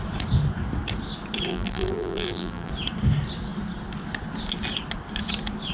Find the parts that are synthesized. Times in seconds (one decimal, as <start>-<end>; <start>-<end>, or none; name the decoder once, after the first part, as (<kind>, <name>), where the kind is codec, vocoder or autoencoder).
1.5-2.7 (vocoder, BigVGAN v2)